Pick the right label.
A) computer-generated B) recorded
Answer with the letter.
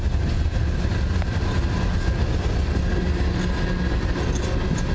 B